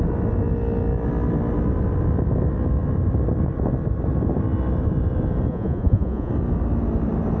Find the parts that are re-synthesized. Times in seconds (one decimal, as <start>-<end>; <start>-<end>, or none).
5.5-6.3